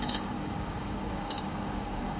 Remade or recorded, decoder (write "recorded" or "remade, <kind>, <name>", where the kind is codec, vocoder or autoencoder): remade, codec, DAC